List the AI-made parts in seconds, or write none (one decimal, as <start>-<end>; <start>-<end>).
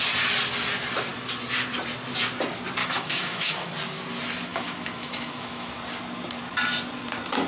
2.8-3.7; 4.5-5.7